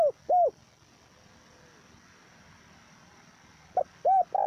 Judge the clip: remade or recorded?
recorded